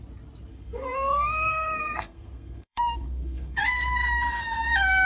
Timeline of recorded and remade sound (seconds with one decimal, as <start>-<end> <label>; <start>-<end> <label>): 0.0-0.5 recorded; 0.5-3.6 remade; 3.6-5.1 recorded